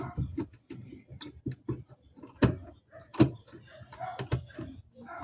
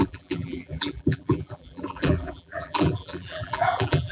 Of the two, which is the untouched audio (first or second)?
first